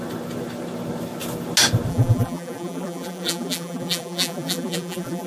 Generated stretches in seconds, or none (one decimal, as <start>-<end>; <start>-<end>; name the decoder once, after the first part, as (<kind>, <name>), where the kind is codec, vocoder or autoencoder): 1.9-5.3 (vocoder, BigVGAN v2)